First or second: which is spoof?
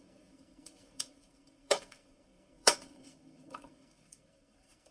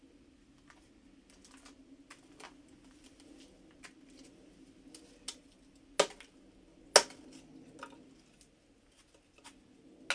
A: first